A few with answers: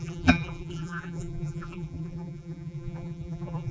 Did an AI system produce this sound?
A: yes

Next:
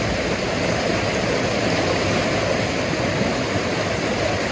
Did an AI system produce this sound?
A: no